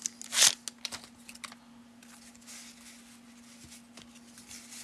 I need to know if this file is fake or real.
real